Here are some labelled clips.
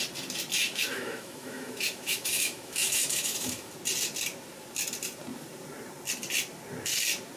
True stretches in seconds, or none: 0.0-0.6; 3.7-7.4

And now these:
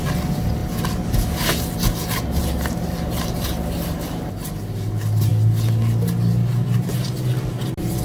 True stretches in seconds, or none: 0.0-8.0

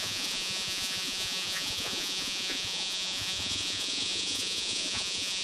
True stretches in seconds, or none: none

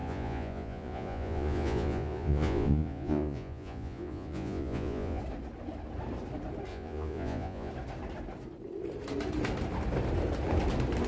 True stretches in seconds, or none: 5.2-6.7; 7.7-11.1

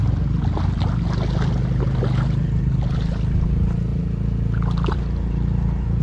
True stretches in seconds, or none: 0.0-6.0

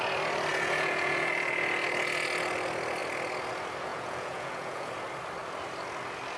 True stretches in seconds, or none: 0.0-0.5; 1.3-3.9; 4.9-6.4